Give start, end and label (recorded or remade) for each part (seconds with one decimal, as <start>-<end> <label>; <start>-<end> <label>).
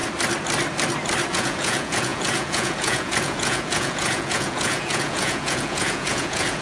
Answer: 0.0-1.3 recorded; 1.3-6.6 remade